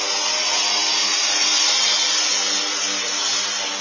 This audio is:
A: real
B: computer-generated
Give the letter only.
A